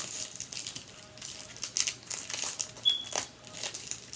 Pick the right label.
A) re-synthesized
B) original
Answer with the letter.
B